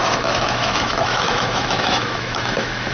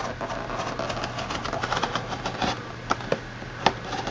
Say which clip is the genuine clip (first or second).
second